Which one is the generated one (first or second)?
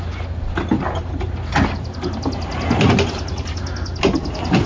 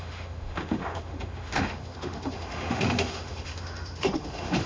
second